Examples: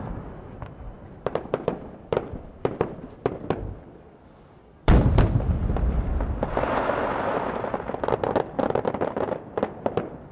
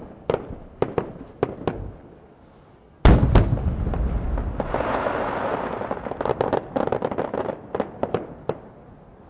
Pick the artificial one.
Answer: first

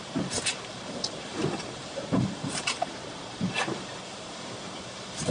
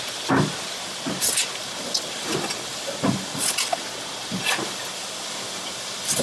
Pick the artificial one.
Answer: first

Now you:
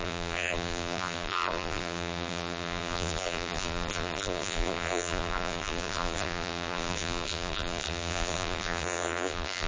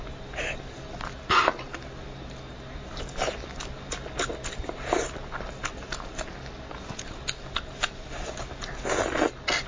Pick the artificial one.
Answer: first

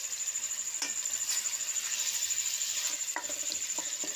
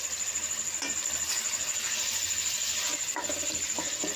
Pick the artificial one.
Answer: first